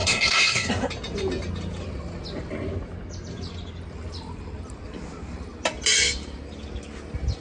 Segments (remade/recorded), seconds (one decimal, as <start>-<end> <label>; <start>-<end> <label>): 0.0-0.7 remade; 0.7-7.4 recorded